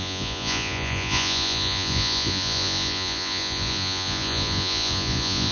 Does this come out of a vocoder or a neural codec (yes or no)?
yes